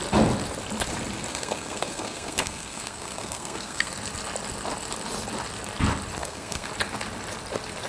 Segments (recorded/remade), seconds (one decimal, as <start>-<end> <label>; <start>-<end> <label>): 0.0-1.3 recorded; 1.3-3.9 remade; 3.9-6.2 recorded; 6.2-6.7 remade; 6.7-7.9 recorded